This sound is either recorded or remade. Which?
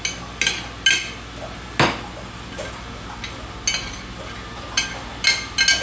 recorded